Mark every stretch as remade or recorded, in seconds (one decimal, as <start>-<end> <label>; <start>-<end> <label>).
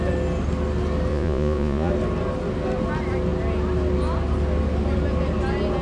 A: 0.0-1.1 recorded; 1.1-1.9 remade; 1.9-5.8 recorded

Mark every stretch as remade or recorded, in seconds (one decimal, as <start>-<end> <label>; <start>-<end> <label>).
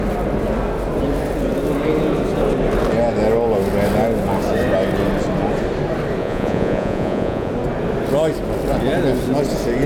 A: 0.0-6.2 recorded; 6.2-7.5 remade; 7.5-9.9 recorded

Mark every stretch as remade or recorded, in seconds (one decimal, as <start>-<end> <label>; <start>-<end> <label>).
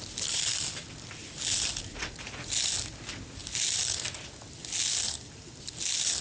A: 0.0-1.9 recorded; 1.9-2.5 remade; 2.5-6.2 recorded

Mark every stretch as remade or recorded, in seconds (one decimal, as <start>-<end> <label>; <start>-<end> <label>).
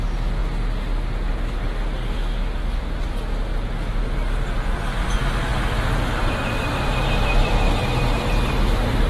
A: 0.0-9.1 recorded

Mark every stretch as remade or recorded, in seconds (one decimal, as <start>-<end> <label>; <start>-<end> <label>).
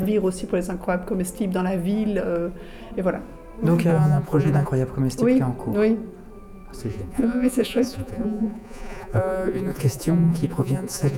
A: 0.0-3.9 recorded; 3.9-4.7 remade; 4.7-6.9 recorded; 6.9-11.2 remade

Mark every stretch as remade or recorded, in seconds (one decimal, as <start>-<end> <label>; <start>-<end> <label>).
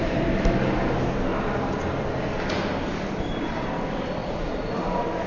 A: 0.0-4.2 recorded; 4.2-4.7 remade; 4.7-5.3 recorded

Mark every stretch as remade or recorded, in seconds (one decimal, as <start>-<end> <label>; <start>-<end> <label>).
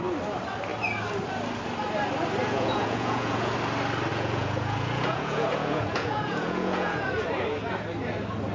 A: 0.0-2.4 recorded; 2.4-3.5 remade; 3.5-4.1 recorded; 4.1-7.3 remade; 7.3-8.5 recorded